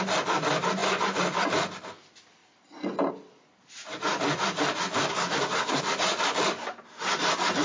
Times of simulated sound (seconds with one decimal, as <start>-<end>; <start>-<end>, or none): 5.1-5.8